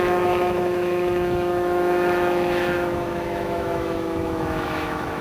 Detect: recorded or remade remade